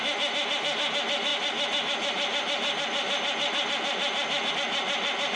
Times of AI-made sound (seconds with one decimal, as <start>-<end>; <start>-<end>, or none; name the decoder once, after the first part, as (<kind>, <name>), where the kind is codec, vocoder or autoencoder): none